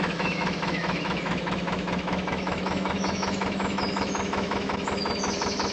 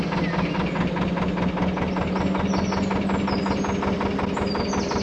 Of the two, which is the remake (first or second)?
first